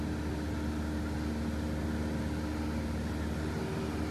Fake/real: real